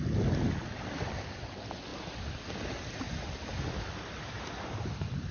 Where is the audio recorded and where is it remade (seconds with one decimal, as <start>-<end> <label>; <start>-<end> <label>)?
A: 0.0-5.3 recorded